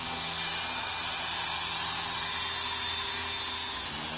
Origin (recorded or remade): recorded